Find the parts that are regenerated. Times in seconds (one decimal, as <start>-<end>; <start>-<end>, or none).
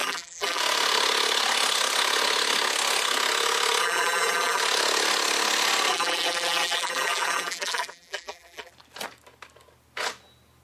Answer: 0.0-0.6; 3.8-4.6; 5.9-8.7